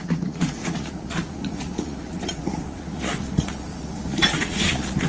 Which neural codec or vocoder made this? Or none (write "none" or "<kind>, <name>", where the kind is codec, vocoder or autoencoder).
vocoder, Vocos